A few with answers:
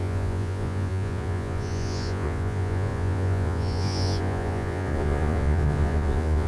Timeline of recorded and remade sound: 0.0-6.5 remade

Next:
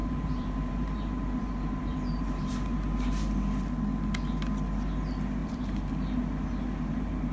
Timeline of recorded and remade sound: 0.0-2.5 remade; 2.5-5.4 recorded; 5.4-5.9 remade; 5.9-7.3 recorded

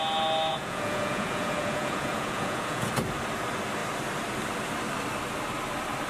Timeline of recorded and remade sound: 0.0-0.5 recorded; 0.5-2.9 remade; 2.9-6.1 recorded

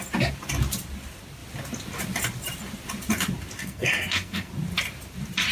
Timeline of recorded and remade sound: 0.0-3.6 recorded; 3.6-4.5 remade; 4.5-5.5 recorded